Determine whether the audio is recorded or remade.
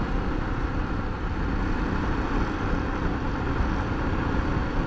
recorded